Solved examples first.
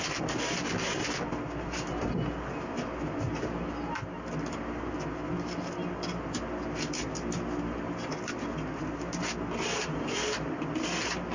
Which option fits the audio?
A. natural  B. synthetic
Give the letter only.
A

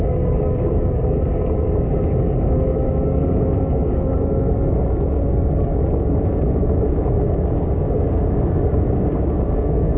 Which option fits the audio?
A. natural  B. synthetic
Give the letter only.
B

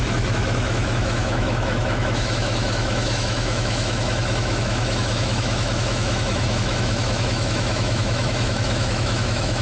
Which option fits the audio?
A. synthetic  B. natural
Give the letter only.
A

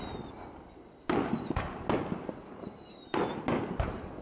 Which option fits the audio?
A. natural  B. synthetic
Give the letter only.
A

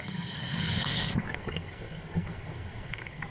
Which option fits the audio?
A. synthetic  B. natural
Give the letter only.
A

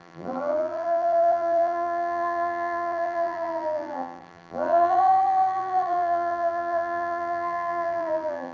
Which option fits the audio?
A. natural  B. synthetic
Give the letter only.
B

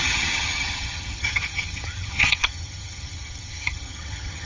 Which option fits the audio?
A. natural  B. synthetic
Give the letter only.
B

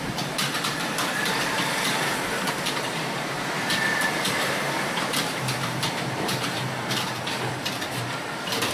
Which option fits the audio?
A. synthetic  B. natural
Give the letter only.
A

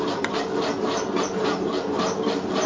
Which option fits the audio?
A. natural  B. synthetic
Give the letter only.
B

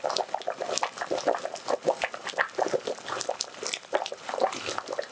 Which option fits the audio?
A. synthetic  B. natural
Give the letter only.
B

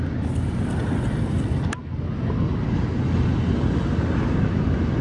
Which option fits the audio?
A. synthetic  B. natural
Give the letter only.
B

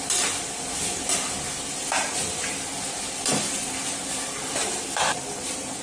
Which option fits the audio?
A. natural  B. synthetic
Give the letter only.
A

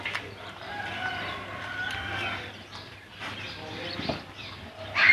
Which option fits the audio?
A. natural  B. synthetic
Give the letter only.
A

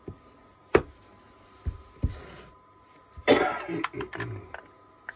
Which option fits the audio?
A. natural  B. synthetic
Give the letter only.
A